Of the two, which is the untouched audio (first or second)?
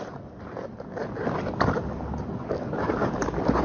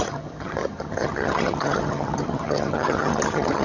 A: first